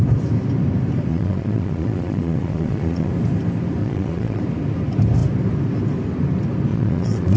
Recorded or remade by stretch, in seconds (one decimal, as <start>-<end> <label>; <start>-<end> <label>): 0.0-1.1 recorded; 1.1-3.1 remade; 3.1-3.8 recorded; 3.8-4.4 remade; 4.4-6.7 recorded; 6.7-7.4 remade